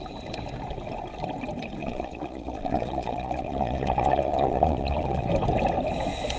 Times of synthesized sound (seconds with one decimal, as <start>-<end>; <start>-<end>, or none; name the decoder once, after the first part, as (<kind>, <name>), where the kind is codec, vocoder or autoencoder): 1.8-5.3 (vocoder, Vocos)